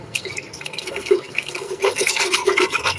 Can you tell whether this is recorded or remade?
remade